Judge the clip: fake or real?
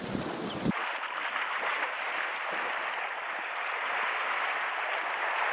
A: real